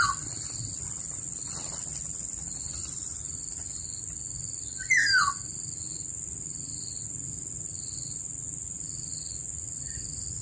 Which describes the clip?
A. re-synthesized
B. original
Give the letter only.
B